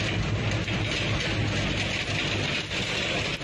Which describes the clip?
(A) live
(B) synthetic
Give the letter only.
A